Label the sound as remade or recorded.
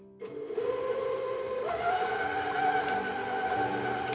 recorded